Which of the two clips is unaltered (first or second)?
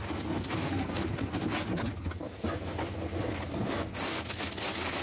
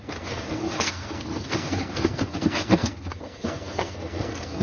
first